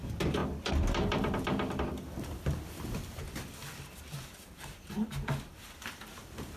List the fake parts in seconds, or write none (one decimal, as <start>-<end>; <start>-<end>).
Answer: 0.4-3.2; 3.6-6.0